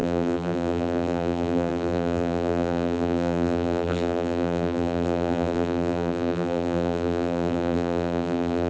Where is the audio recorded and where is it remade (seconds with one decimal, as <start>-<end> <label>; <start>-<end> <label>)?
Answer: 0.0-8.7 remade